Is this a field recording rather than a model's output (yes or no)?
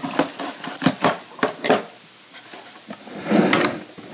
yes